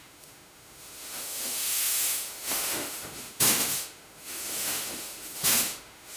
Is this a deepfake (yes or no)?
yes